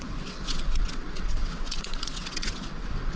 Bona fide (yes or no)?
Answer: no